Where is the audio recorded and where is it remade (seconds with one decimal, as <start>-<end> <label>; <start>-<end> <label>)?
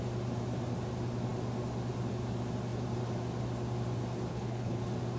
0.0-4.3 recorded; 4.3-4.8 remade; 4.8-5.2 recorded